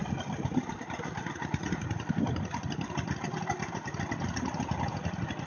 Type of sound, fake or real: real